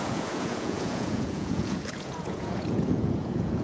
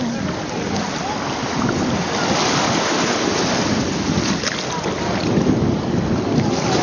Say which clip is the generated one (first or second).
first